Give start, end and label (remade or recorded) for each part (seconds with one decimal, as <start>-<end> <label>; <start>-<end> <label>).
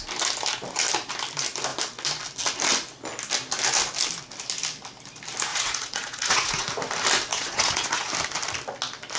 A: 0.0-5.5 recorded; 5.5-6.7 remade; 6.7-7.3 recorded; 7.3-8.1 remade; 8.1-9.2 recorded